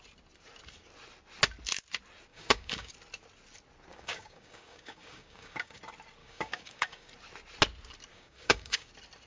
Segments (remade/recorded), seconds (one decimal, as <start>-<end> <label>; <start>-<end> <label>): 0.0-2.3 recorded; 2.3-2.9 remade; 2.9-3.9 recorded; 3.9-5.8 remade; 5.8-6.2 recorded; 6.2-7.1 remade; 7.1-8.1 recorded; 8.1-8.9 remade; 8.9-9.3 recorded